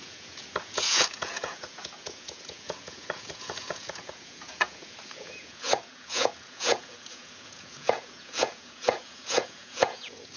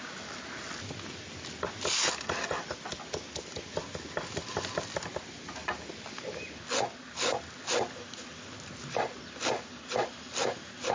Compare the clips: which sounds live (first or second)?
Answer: second